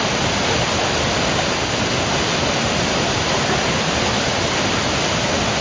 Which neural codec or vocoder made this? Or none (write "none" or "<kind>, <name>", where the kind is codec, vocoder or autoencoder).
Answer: none